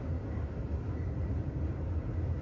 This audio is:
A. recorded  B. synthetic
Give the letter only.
A